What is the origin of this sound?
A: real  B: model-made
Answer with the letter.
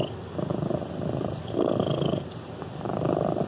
B